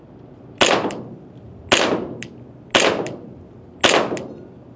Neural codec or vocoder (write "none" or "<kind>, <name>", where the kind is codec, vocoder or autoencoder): none